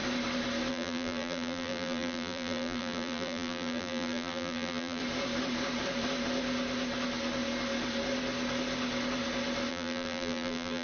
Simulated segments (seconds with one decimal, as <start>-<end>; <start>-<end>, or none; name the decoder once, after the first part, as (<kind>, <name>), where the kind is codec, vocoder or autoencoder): 0.7-5.0 (vocoder, BigVGAN v2); 9.7-10.8